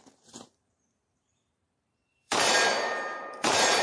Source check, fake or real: fake